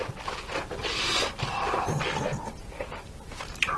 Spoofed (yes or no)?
no